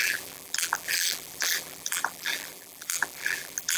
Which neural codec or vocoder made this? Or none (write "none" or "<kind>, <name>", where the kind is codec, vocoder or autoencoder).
vocoder, BigVGAN v2